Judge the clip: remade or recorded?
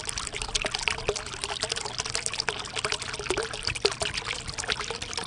recorded